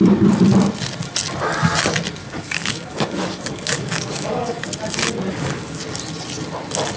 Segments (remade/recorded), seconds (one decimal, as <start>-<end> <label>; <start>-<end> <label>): 0.0-2.2 recorded; 2.2-4.6 remade; 4.6-5.3 recorded; 5.3-5.8 remade; 5.8-7.0 recorded